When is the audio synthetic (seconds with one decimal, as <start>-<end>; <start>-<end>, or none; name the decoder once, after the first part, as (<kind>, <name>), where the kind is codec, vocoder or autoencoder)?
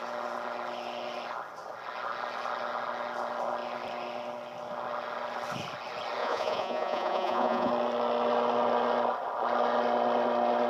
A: 6.2-7.7 (vocoder, Vocos)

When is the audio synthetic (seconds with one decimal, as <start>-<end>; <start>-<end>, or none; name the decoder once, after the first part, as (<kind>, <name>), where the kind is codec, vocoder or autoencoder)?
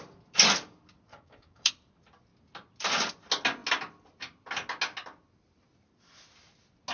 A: 1.1-1.7 (codec, DAC)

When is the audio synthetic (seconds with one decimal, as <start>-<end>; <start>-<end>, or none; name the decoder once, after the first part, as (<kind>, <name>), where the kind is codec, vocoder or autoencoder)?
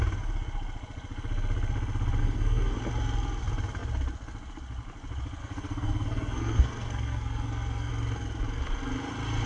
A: 2.2-2.8 (codec, SNAC); 5.4-7.9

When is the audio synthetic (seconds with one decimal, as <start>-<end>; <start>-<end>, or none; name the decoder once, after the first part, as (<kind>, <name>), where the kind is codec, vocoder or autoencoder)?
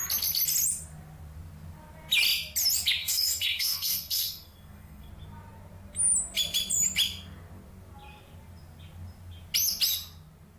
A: 3.0-5.1 (codec, SNAC)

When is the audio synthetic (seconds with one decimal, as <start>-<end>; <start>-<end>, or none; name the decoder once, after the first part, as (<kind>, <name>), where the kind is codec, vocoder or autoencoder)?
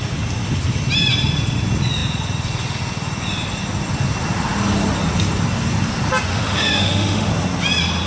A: 6.3-7.3 (autoencoder, DAC-VAE)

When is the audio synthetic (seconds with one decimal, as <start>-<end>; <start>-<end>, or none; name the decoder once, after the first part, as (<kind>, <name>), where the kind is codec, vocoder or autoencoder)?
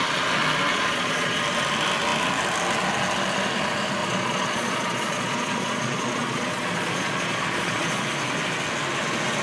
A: 0.7-1.4 (vocoder, Vocos); 4.0-8.0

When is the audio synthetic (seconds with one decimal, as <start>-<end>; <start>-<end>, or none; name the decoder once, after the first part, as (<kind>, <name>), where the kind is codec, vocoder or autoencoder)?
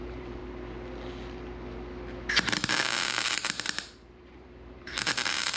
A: 0.0-0.4 (vocoder, BigVGAN v2); 3.8-5.6